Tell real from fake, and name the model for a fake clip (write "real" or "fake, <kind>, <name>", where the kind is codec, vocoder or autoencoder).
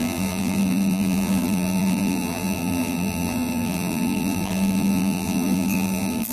fake, vocoder, BigVGAN v2